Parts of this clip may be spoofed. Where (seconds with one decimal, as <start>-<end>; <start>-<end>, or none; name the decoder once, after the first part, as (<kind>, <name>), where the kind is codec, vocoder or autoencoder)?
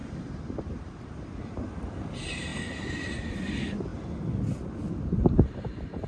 0.6-3.9 (vocoder, BigVGAN v2); 4.7-6.1